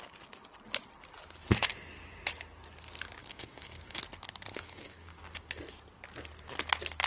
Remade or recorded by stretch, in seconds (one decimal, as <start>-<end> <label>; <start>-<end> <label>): 0.0-3.2 recorded; 3.2-4.0 remade; 4.0-4.5 recorded; 4.5-5.2 remade; 5.2-7.1 recorded